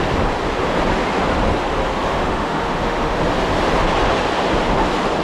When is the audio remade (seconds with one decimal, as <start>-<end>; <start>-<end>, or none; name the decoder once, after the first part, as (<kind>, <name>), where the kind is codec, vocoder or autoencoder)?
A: 2.1-3.2 (autoencoder, DAC-VAE)